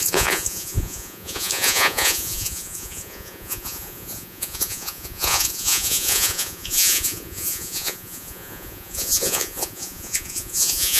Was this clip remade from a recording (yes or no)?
yes